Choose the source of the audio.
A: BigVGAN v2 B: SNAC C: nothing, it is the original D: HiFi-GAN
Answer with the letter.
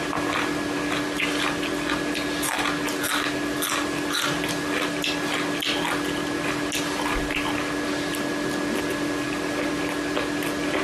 C